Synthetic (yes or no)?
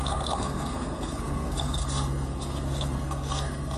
yes